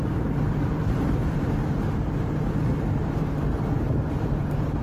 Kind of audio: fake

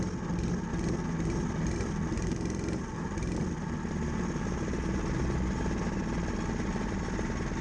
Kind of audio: real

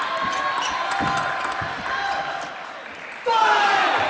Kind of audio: real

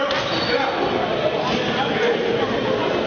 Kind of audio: real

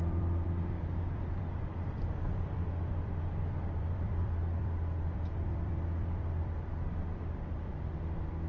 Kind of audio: fake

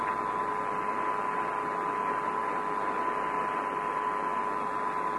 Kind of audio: real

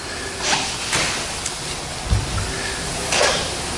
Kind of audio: real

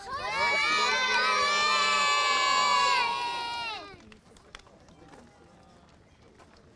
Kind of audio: real